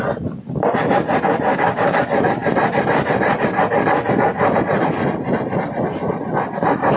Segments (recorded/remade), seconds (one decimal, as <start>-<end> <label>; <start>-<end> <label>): 0.0-1.5 recorded; 1.5-2.0 remade; 2.0-7.0 recorded